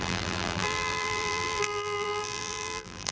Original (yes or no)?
no